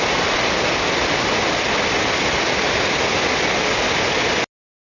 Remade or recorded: recorded